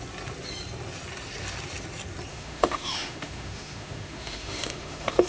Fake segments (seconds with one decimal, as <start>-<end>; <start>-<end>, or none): 2.3-5.3